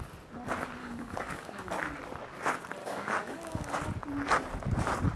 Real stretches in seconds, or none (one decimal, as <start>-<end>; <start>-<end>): 0.0-0.8; 1.7-2.8; 3.9-5.2